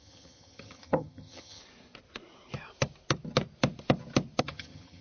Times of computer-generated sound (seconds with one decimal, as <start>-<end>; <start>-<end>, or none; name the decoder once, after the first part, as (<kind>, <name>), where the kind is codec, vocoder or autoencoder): 0.0-1.6 (vocoder, HiFi-GAN); 4.4-5.0